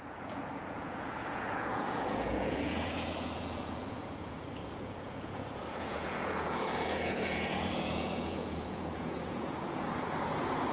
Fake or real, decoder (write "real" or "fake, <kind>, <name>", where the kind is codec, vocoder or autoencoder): fake, vocoder, Vocos